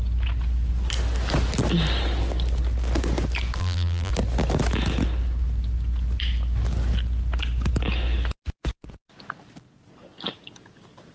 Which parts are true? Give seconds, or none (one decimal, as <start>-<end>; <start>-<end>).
0.0-3.6; 4.1-11.1